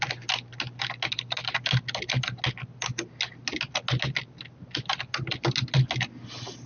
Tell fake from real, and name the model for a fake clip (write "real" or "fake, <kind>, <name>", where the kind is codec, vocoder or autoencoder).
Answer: real